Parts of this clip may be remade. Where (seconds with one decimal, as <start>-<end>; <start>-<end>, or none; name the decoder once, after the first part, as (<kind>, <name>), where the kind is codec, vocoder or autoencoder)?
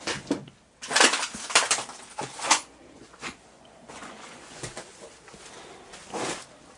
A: 2.4-5.0 (vocoder, Vocos)